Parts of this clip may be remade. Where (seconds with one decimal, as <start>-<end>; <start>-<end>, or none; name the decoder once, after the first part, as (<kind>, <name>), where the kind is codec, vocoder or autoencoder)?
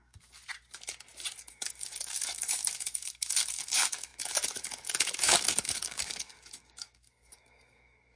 0.0-0.4 (codec, DAC); 1.5-8.2